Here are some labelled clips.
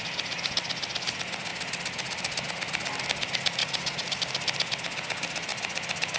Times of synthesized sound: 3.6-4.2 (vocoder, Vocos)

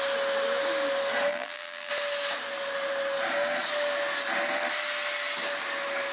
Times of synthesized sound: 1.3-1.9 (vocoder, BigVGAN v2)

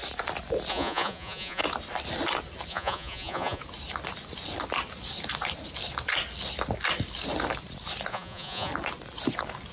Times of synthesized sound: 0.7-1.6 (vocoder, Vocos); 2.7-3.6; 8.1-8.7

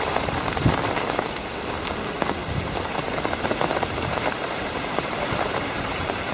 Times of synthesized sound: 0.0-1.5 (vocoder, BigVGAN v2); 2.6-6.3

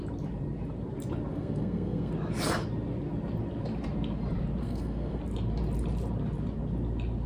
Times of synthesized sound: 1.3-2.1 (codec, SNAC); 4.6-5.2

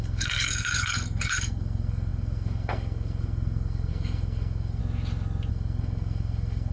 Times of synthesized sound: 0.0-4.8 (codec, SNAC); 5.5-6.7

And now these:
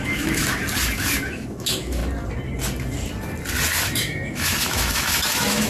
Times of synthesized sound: 0.0-0.6 (autoencoder, DAC-VAE); 1.3-2.0; 3.8-5.7

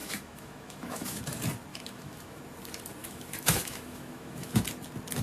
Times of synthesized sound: 0.0-1.2 (autoencoder, DAC-VAE); 1.7-2.4; 3.0-4.6